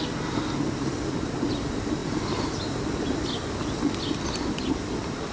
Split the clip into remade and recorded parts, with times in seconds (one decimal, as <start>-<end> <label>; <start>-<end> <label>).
0.0-5.3 recorded